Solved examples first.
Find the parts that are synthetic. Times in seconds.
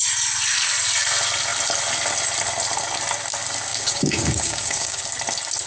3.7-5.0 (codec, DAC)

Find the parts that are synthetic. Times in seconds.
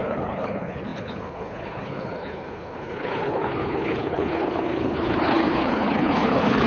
0.0-6.7 (codec, HILCodec)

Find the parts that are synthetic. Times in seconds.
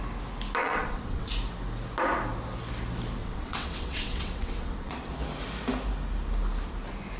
0.6-1.3 (vocoder, WaveNeXt); 3.2-5.1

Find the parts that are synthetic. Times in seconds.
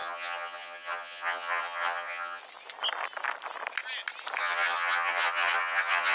0.0-2.4 (vocoder, HiFi-GAN); 4.4-6.1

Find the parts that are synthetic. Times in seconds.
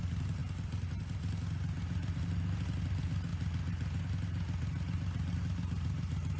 none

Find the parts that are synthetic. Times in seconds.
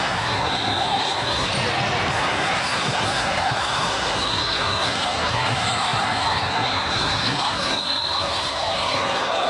0.0-1.5 (codec, SNAC); 2.1-9.5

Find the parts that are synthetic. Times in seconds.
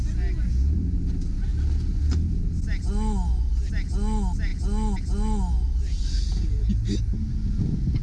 none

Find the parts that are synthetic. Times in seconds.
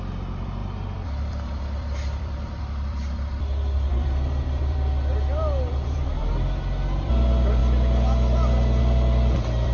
0.0-3.3 (vocoder, BigVGAN v2); 3.9-7.6; 8.8-9.7